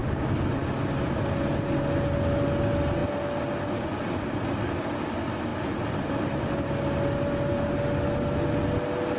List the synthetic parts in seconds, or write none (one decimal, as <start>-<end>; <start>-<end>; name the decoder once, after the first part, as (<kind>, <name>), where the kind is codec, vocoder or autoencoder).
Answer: none